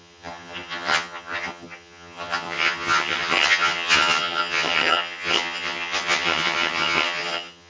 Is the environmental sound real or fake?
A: fake